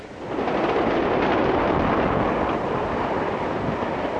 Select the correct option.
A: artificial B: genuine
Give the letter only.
A